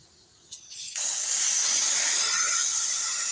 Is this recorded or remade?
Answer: remade